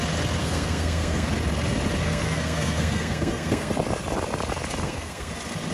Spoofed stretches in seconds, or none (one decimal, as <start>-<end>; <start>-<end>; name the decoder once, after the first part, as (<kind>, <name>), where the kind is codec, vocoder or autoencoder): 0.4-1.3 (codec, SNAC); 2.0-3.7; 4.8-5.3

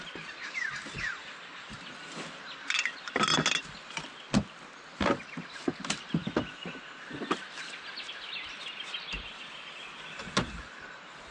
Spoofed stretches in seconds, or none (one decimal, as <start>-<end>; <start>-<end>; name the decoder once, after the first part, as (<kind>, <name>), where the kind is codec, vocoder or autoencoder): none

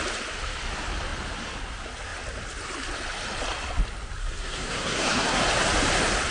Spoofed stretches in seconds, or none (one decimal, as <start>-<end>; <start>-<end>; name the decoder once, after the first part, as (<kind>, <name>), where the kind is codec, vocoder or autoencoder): 4.2-5.4 (codec, SNAC)

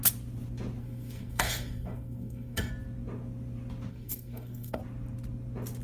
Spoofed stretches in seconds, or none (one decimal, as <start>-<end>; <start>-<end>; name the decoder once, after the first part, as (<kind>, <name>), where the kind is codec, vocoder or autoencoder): 0.8-2.7 (codec, SNAC); 3.9-4.8

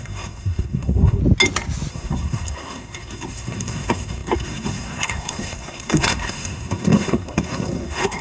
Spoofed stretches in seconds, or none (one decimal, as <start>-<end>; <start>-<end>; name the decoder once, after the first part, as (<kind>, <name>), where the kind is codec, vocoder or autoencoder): 0.0-1.2 (codec, SNAC); 1.9-8.2

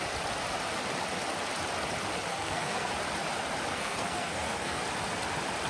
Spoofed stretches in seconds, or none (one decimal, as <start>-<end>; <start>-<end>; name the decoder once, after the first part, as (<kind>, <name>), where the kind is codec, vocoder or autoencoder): 2.3-2.9 (codec, SNAC); 3.7-4.8

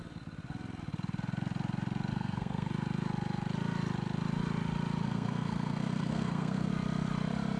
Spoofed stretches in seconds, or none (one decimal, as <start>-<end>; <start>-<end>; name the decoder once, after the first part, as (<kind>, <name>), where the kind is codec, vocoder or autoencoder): 2.1-2.7 (codec, SNAC); 5.0-6.7